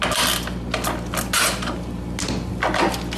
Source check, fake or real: real